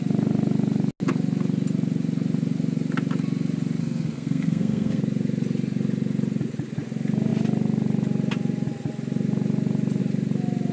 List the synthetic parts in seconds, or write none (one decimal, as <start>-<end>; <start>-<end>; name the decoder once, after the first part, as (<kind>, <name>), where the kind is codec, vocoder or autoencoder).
3.8-5.0 (codec, SNAC)